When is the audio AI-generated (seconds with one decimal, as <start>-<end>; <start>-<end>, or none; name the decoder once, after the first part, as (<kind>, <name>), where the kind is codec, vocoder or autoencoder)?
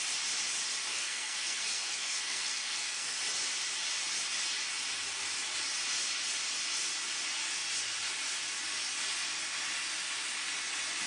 0.9-3.2 (codec, SNAC)